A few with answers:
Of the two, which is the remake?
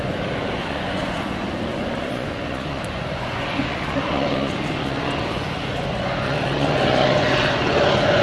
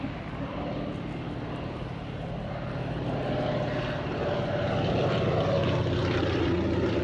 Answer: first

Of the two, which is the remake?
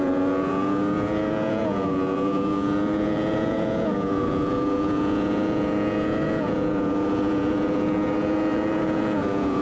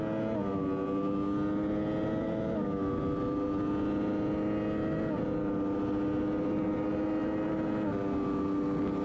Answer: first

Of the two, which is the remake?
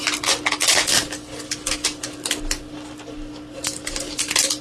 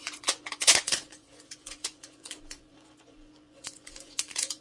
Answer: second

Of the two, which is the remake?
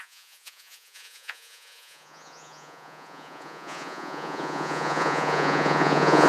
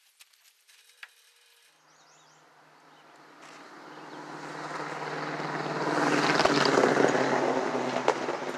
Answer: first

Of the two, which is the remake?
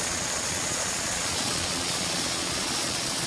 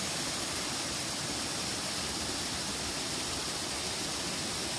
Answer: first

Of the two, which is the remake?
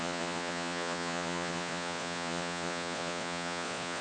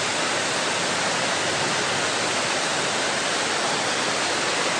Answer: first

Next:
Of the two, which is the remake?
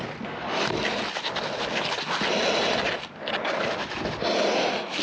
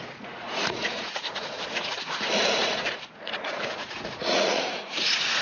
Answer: second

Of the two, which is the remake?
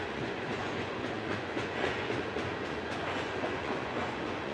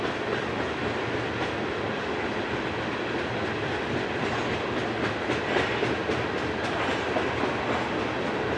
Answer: first